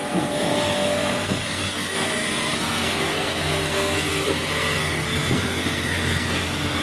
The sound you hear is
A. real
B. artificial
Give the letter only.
B